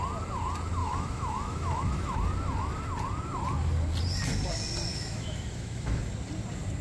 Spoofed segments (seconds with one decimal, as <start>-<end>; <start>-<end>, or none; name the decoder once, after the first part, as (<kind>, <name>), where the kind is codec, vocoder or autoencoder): 0.8-2.2 (autoencoder, DAC-VAE); 4.9-6.1